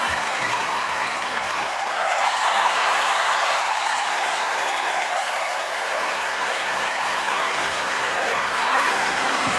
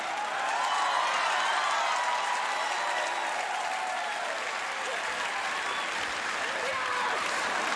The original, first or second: second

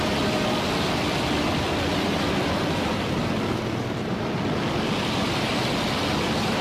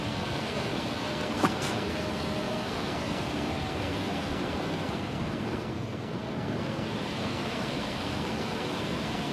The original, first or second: first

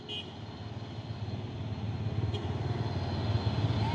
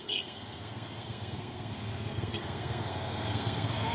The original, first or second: first